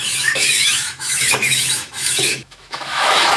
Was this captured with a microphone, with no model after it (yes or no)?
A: no